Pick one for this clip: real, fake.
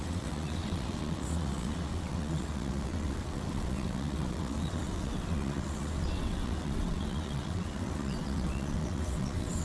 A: fake